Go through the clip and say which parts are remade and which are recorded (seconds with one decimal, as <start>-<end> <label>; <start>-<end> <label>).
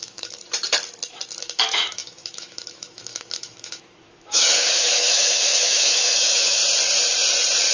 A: 0.0-0.4 remade; 0.4-1.4 recorded; 1.4-6.6 remade; 6.6-7.7 recorded